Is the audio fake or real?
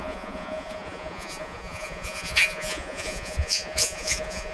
fake